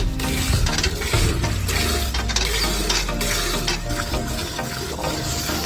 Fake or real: real